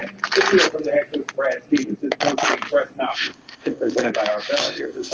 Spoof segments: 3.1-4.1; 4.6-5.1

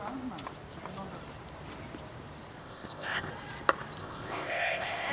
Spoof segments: 2.6-3.3; 4.0-5.1

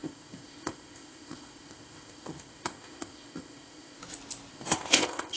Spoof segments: 0.0-4.0; 4.5-5.4

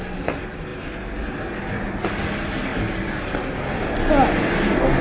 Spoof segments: none

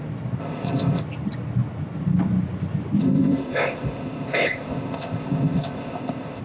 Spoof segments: 0.4-1.0; 3.0-6.4

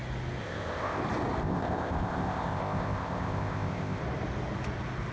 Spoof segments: 0.4-1.0; 1.4-4.0